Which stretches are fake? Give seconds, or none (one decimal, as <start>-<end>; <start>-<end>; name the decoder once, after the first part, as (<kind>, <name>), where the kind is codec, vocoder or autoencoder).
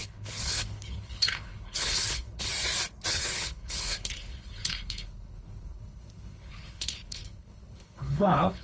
0.0-2.5 (codec, HILCodec); 3.1-8.6